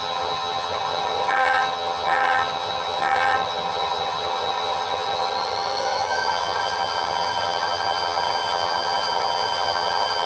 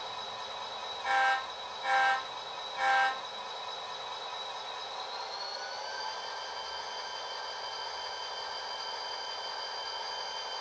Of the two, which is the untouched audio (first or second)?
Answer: second